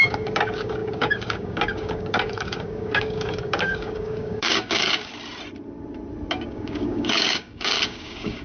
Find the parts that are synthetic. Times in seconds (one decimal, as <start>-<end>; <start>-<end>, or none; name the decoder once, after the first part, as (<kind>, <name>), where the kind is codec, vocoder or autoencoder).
0.0-5.1 (codec, DAC); 6.3-8.4